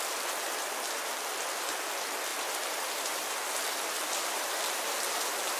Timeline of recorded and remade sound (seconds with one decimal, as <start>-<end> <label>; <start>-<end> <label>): 0.0-5.6 recorded